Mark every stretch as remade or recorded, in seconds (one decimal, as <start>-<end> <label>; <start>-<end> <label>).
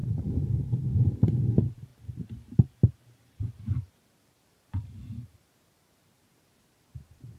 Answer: 0.0-0.8 remade; 0.8-1.9 recorded; 1.9-6.3 remade; 6.3-7.4 recorded